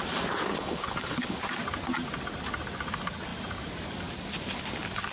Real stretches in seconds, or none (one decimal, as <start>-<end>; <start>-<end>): 0.0-0.5; 1.4-5.1